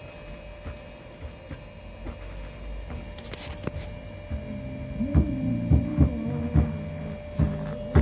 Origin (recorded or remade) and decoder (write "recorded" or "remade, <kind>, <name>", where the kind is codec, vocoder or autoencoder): recorded